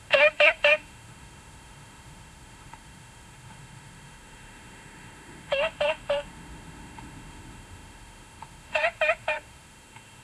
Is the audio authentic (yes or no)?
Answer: no